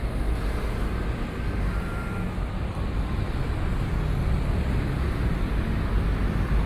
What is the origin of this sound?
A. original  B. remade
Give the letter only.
A